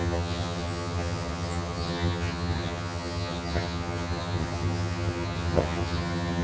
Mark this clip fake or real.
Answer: fake